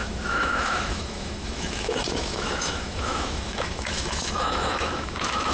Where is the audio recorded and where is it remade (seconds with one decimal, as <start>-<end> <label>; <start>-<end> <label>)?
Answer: 0.0-5.5 remade